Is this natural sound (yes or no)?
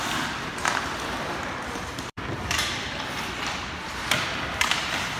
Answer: no